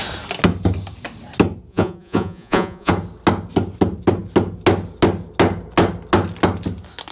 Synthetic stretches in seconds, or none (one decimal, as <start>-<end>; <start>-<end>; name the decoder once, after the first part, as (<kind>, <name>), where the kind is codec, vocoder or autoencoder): 1.7-2.9 (vocoder, Vocos)

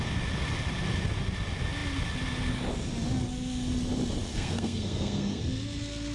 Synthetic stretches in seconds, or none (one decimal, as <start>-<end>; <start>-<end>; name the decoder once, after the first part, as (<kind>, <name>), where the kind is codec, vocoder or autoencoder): 4.3-5.4 (codec, SNAC)